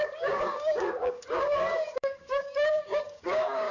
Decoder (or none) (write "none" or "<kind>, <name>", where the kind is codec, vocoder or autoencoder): codec, DAC